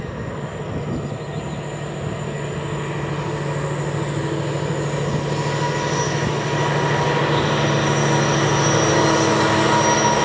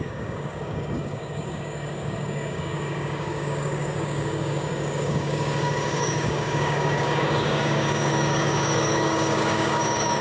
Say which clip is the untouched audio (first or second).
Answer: first